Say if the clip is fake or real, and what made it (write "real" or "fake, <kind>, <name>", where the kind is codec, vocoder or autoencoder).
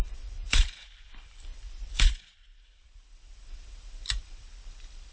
fake, vocoder, BigVGAN v2